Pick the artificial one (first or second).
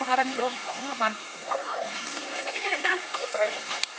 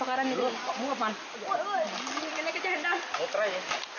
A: first